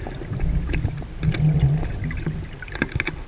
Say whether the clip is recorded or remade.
recorded